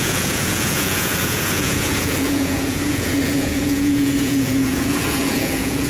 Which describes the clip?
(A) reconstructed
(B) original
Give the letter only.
A